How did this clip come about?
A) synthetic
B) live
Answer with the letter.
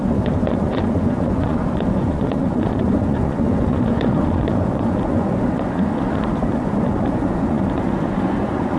A